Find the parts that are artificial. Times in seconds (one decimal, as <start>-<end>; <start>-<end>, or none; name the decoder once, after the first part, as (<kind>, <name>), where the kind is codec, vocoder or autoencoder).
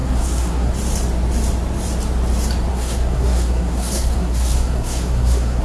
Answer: 0.0-0.7 (codec, SNAC); 2.7-5.6